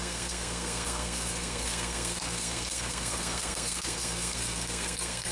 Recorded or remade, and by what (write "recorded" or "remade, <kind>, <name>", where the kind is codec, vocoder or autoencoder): remade, codec, SNAC